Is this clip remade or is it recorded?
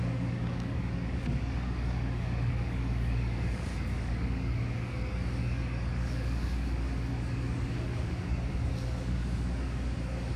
remade